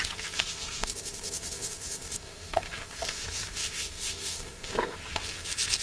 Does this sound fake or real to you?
fake